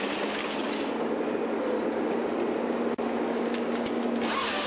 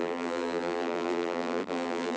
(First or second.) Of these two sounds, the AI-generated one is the second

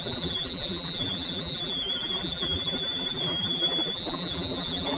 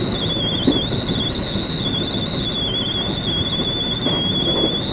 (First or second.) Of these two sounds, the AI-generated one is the first